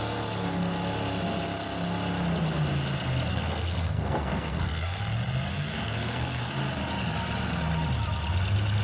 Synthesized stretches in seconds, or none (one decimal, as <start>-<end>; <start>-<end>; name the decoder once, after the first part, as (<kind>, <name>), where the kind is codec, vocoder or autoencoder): 3.3-5.0 (codec, SNAC); 5.5-6.5